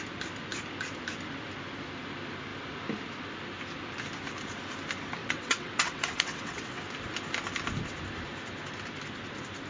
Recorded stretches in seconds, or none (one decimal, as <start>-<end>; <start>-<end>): 0.0-5.2; 6.8-9.7